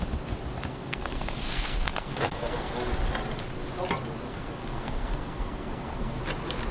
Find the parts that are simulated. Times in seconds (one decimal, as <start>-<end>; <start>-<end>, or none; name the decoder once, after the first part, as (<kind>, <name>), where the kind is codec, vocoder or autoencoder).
0.7-2.7 (codec, SNAC); 4.3-6.2